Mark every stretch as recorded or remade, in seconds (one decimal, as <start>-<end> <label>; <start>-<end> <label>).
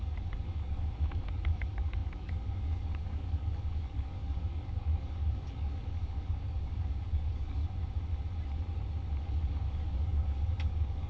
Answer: 0.0-7.6 remade; 7.6-9.2 recorded; 9.2-11.1 remade